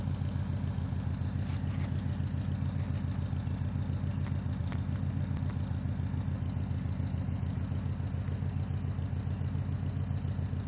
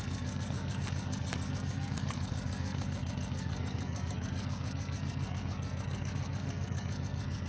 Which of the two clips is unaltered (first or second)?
first